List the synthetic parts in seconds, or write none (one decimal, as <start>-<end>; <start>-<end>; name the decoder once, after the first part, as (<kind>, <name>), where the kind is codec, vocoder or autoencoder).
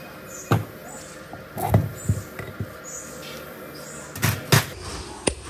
4.9-5.5 (vocoder, BigVGAN v2)